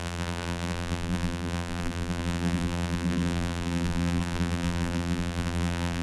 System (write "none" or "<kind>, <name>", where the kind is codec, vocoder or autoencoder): vocoder, BigVGAN v2